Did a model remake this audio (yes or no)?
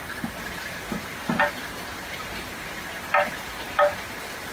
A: no